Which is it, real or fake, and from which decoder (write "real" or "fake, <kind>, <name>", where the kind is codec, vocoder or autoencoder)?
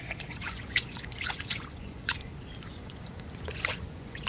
fake, vocoder, Vocos